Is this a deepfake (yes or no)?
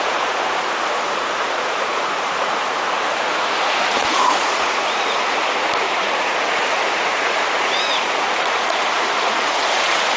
yes